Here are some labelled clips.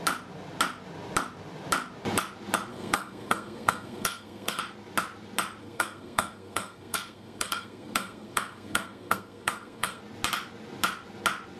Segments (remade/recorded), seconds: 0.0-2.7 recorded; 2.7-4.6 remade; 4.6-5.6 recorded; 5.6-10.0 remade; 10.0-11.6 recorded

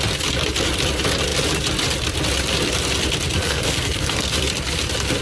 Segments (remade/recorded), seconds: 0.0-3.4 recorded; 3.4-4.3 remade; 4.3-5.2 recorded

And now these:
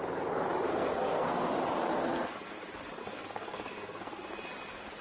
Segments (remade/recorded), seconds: 0.0-0.7 recorded; 0.7-1.5 remade; 1.5-1.9 recorded; 1.9-2.5 remade; 2.5-3.0 recorded; 3.0-4.3 remade; 4.3-5.0 recorded

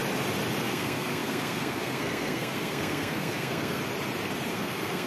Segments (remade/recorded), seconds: 0.0-0.6 recorded; 0.6-3.8 remade; 3.8-4.5 recorded; 4.5-5.1 remade

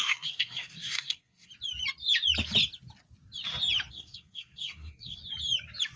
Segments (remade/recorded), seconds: 0.0-1.5 remade; 1.5-3.9 recorded; 3.9-5.2 remade; 5.2-6.0 recorded

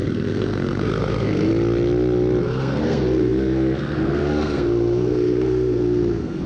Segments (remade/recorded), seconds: 0.0-1.5 remade; 1.5-2.4 recorded; 2.4-6.5 remade

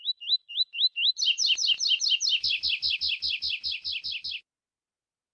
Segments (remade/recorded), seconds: 0.0-5.3 recorded

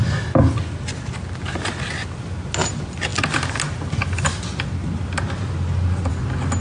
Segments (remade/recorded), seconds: 0.0-6.6 recorded